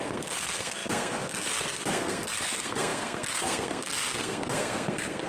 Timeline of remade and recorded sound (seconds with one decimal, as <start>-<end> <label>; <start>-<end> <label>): 0.0-5.3 remade

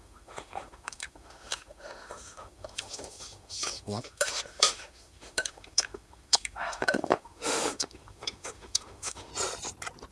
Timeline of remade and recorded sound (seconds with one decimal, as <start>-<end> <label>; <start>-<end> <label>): 0.0-9.3 remade; 9.3-10.1 recorded

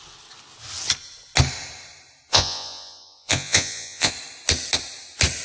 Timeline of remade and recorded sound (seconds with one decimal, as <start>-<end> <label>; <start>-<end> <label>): 0.0-2.3 recorded; 2.3-4.1 remade; 4.1-5.4 recorded

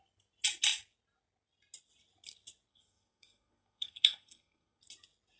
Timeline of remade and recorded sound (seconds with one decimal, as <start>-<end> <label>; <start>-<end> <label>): 0.0-2.7 recorded; 2.7-4.8 remade; 4.8-5.4 recorded

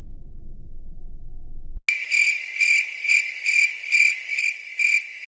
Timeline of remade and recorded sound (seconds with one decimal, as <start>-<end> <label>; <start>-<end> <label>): 0.0-5.3 recorded

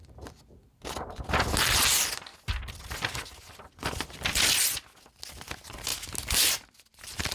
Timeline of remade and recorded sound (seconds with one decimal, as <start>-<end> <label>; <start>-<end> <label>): 0.0-7.3 recorded